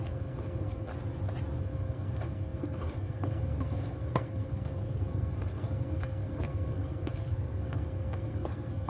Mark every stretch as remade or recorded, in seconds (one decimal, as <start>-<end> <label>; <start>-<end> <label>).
0.0-0.9 remade; 0.9-1.6 recorded; 1.6-8.9 remade